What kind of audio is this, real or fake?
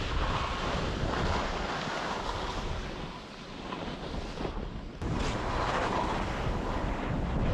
real